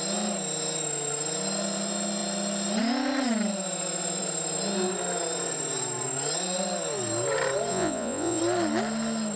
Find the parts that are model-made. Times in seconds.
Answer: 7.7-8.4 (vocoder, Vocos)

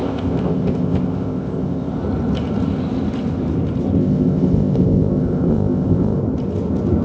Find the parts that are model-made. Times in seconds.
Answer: 0.0-1.9 (codec, ZipCodec); 4.0-6.2